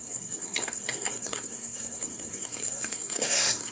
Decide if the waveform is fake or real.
fake